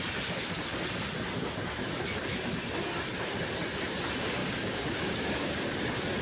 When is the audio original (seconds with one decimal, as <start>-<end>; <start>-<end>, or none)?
0.0-4.4; 5.7-6.2